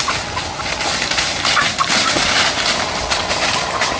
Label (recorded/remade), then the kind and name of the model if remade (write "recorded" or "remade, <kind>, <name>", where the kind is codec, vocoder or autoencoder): recorded